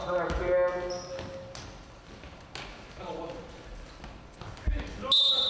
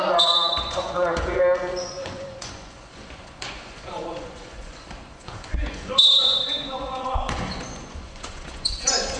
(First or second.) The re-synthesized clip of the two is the second